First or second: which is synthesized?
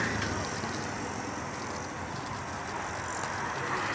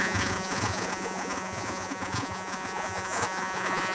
second